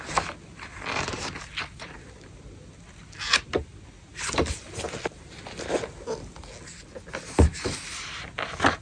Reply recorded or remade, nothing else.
recorded